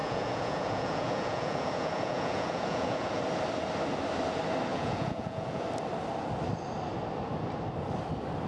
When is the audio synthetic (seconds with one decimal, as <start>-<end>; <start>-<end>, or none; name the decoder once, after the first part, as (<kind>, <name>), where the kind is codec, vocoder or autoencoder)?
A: 0.0-3.2 (vocoder, Vocos); 4.7-5.6